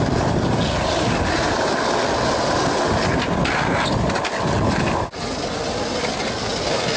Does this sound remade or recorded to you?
recorded